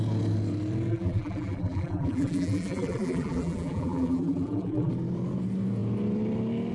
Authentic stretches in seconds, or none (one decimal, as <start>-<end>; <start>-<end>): 0.0-0.9; 4.9-6.7